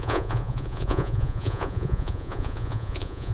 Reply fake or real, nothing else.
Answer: fake